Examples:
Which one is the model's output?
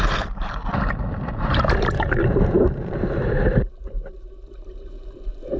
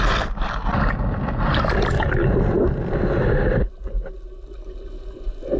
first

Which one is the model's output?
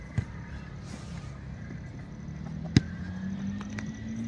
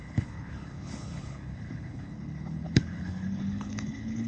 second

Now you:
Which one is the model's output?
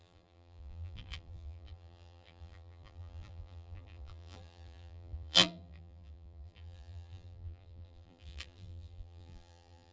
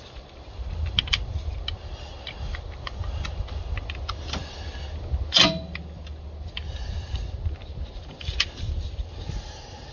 first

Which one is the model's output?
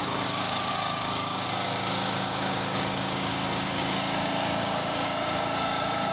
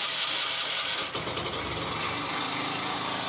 first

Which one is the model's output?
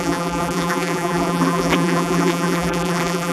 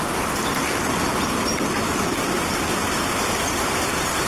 first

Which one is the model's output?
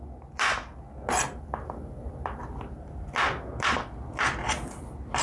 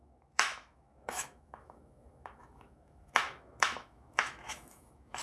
second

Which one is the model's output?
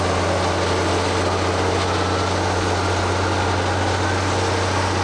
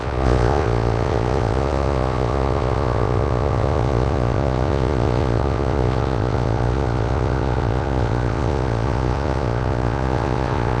second